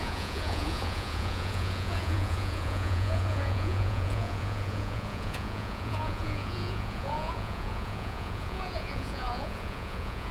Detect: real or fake fake